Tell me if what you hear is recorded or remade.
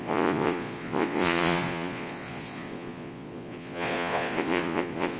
remade